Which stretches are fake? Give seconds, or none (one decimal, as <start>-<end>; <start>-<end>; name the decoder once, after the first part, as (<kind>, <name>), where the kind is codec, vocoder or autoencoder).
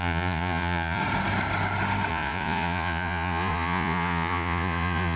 0.0-1.0 (vocoder, Vocos); 2.1-5.2